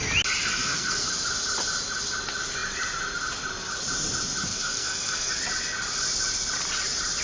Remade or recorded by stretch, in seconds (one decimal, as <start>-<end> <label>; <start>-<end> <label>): 0.0-0.5 recorded; 0.5-1.1 remade; 1.1-4.5 recorded; 4.5-5.3 remade; 5.3-7.2 recorded